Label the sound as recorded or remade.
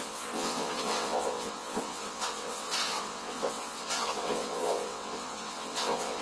remade